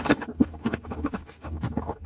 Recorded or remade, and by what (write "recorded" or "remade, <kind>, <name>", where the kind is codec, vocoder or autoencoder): remade, codec, DAC